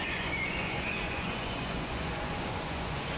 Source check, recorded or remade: remade